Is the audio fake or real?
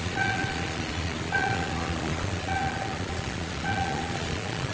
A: fake